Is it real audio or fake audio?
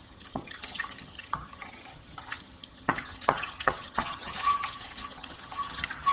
fake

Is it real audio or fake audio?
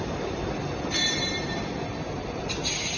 real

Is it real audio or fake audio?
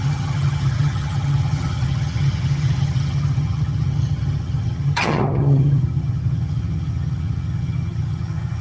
fake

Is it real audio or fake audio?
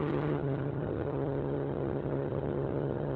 fake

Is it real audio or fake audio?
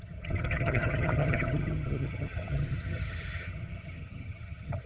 fake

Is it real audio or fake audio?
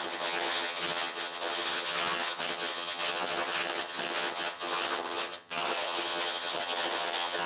fake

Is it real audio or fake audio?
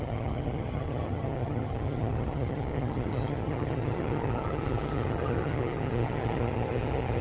fake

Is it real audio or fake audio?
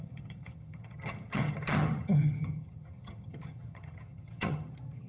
fake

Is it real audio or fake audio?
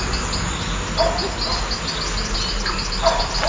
real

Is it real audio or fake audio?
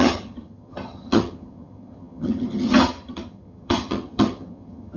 fake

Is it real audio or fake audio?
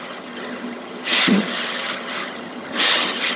fake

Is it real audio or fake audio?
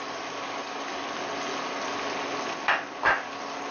real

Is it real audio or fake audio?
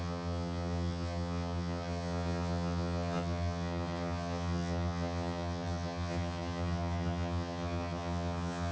fake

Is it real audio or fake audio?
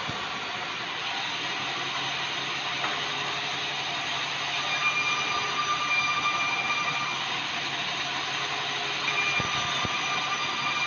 real